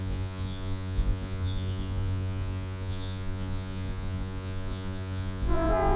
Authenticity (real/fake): fake